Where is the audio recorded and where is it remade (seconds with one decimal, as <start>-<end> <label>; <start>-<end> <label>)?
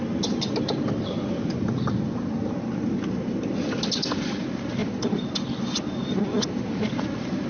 0.0-7.5 recorded